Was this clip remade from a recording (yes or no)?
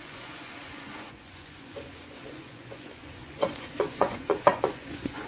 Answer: yes